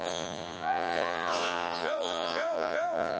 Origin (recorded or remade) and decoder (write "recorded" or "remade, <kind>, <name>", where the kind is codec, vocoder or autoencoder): remade, vocoder, Vocos